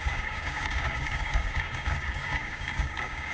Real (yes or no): no